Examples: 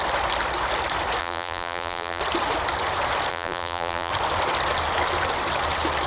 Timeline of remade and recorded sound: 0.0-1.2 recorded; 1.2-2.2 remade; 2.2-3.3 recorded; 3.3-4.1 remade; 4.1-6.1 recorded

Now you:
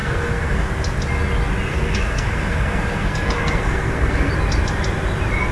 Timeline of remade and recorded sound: 0.0-0.7 remade; 0.7-1.7 recorded; 1.7-4.3 remade; 4.3-5.5 recorded

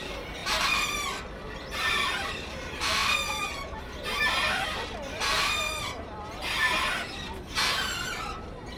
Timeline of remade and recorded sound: 0.0-8.8 remade

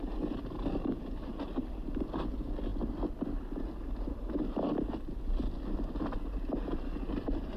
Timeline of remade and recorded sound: 0.0-7.6 recorded

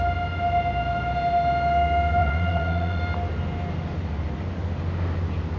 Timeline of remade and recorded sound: 0.0-2.2 recorded; 2.2-3.0 remade; 3.0-5.6 recorded

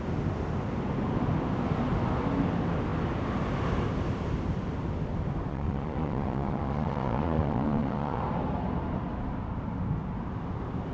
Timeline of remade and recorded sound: 0.0-5.5 recorded; 5.5-8.2 remade; 8.2-10.9 recorded